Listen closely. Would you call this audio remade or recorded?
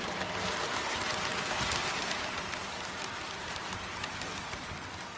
recorded